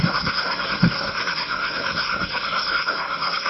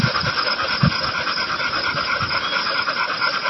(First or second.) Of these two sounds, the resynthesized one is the first